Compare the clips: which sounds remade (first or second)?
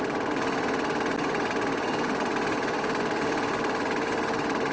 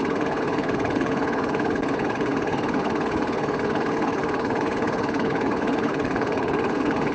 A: second